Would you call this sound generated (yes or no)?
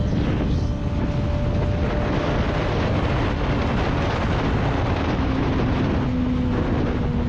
no